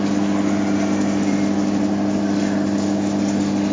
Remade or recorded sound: recorded